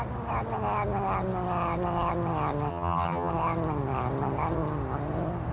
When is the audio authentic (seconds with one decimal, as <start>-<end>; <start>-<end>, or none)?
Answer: 0.0-2.7; 3.3-5.5